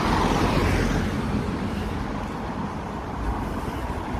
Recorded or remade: recorded